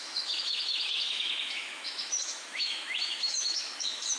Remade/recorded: remade